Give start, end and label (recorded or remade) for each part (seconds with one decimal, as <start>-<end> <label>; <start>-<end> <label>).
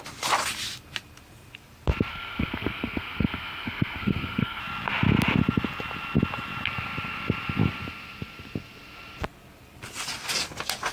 0.0-2.1 recorded; 2.1-4.6 remade; 4.6-10.9 recorded